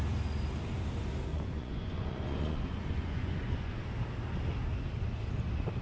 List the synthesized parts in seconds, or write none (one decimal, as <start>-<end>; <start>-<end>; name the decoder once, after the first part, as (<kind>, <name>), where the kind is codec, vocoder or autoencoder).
1.3-3.8 (vocoder, Vocos)